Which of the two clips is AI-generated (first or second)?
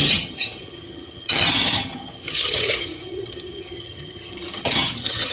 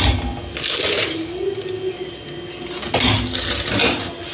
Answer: first